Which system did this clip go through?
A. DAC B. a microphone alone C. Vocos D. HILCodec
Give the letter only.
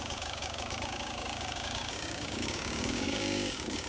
A